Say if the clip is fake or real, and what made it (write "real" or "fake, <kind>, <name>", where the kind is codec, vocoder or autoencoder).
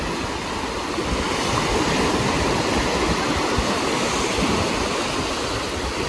real